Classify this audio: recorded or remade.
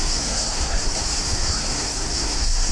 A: remade